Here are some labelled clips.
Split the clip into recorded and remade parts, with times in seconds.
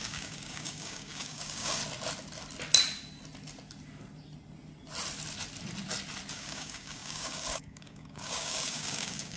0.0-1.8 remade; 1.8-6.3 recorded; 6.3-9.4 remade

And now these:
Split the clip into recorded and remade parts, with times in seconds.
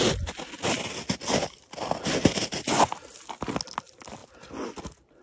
0.0-5.2 recorded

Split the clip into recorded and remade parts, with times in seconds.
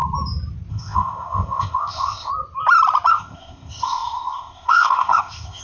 0.0-0.7 recorded; 0.7-2.3 remade; 2.3-3.1 recorded; 3.1-5.6 remade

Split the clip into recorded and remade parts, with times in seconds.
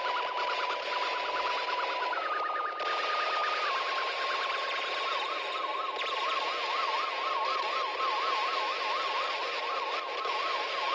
0.0-3.4 recorded; 3.4-6.5 remade; 6.5-10.9 recorded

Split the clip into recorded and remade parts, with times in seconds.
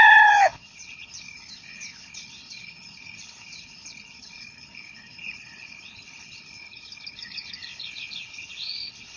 0.0-9.2 remade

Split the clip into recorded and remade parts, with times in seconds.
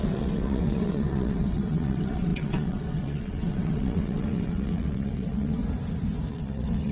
0.0-5.6 remade; 5.6-6.3 recorded; 6.3-6.9 remade